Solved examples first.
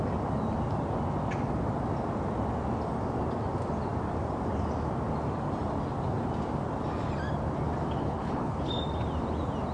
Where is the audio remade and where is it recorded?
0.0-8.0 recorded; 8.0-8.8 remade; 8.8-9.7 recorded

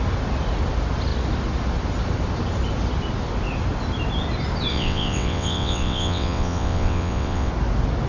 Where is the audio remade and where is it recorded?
0.0-4.7 recorded; 4.7-7.5 remade; 7.5-8.1 recorded